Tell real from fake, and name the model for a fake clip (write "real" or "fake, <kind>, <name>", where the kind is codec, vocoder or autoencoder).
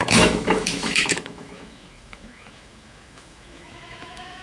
fake, autoencoder, DAC-VAE